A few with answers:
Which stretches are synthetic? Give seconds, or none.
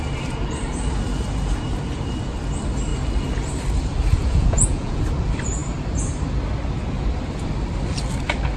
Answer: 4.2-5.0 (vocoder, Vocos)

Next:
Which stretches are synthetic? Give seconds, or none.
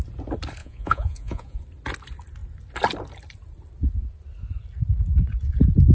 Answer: 0.6-1.6 (vocoder, Vocos)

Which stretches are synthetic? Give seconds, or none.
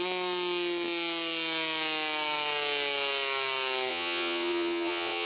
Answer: 3.9-5.3 (vocoder, Vocos)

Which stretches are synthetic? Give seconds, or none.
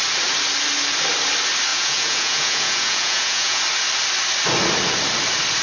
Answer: 1.7-3.6 (vocoder, Vocos)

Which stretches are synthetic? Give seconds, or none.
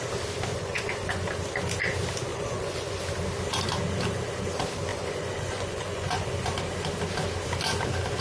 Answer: 0.5-1.3 (vocoder, Vocos); 2.3-3.0; 4.9-6.3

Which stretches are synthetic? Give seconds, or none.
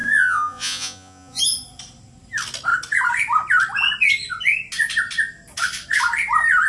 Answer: 0.0-1.4 (vocoder, Vocos)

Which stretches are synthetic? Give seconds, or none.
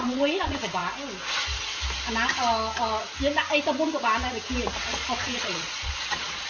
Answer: 0.0-0.8 (vocoder, Vocos); 4.7-6.5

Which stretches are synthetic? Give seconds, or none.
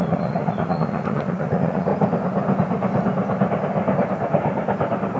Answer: 0.0-1.9 (vocoder, Vocos)